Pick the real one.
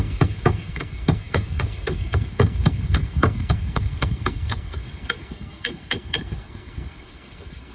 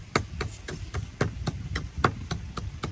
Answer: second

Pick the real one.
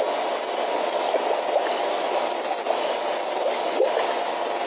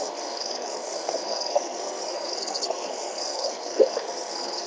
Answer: first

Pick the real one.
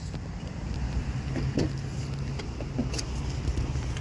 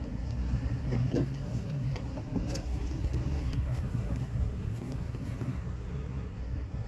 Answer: first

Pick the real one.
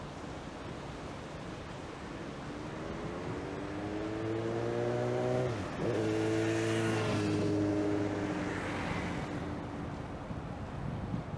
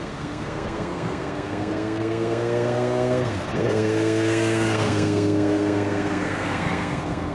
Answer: first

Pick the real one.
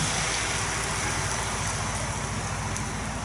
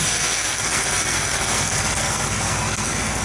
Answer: first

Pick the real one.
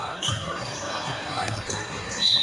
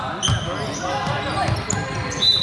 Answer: second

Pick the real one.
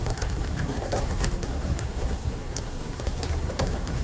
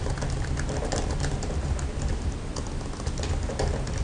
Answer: second